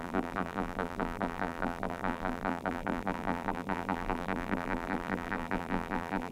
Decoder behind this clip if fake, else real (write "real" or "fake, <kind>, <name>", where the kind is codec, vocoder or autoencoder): fake, vocoder, BigVGAN v2